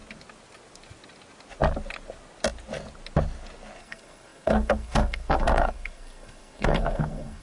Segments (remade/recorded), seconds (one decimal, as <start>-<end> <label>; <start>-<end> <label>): 0.0-3.8 recorded; 3.8-7.4 remade